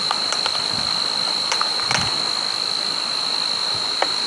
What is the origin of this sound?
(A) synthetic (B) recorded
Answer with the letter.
B